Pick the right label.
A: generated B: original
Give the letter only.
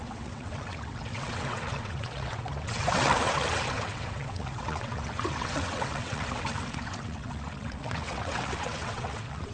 A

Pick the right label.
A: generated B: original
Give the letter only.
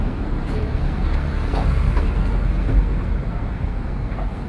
A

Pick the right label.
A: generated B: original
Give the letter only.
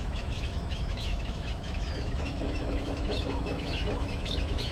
A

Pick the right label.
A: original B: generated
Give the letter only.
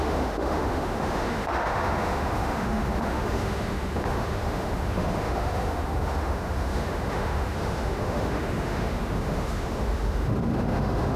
B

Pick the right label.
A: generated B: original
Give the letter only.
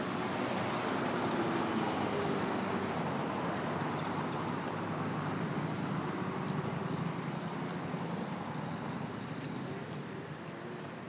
B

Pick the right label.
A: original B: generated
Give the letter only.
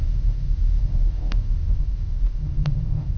B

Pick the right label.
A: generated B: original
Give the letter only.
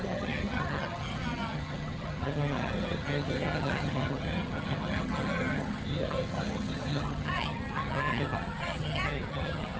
A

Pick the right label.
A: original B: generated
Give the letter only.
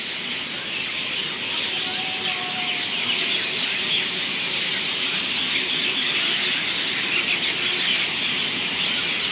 A